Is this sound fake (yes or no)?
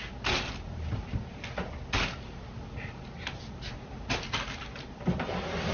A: no